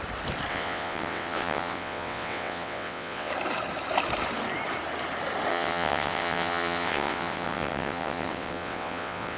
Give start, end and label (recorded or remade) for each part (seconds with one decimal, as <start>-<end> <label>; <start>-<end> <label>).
0.0-0.5 recorded; 0.5-3.3 remade; 3.3-5.5 recorded; 5.5-9.4 remade